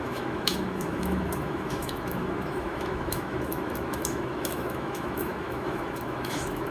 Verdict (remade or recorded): remade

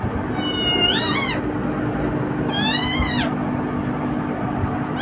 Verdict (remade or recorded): recorded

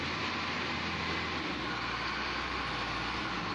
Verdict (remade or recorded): recorded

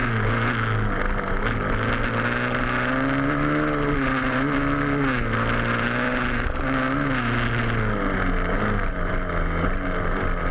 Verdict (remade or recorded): recorded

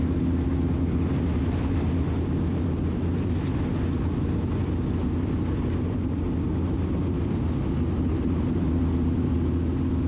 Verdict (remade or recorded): recorded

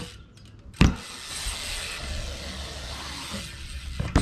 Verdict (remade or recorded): recorded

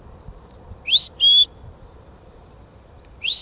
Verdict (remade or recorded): remade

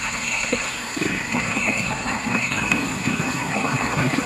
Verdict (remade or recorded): remade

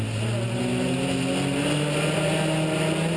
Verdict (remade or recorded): recorded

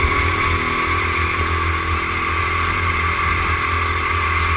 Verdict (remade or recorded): recorded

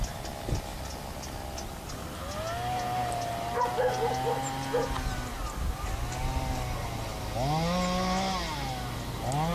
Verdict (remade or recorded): recorded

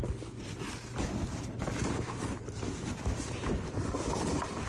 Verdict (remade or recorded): recorded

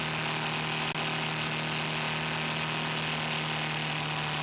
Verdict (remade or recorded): recorded